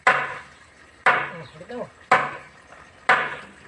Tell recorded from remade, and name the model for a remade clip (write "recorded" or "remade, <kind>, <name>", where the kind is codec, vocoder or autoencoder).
recorded